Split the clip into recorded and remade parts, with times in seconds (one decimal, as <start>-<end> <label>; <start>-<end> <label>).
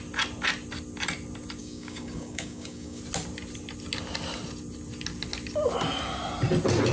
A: 0.0-1.6 recorded; 1.6-3.0 remade; 3.0-6.9 recorded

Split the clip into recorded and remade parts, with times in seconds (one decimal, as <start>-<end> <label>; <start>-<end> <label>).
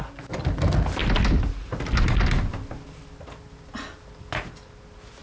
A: 0.0-5.2 recorded